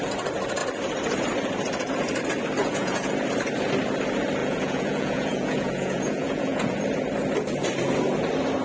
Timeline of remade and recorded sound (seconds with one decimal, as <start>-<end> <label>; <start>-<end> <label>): 0.0-2.6 recorded; 2.6-3.1 remade; 3.1-4.4 recorded; 4.4-6.8 remade; 6.8-8.6 recorded